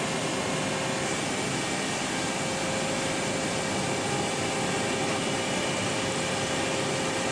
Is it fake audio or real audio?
real